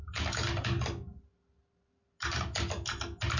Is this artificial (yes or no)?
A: no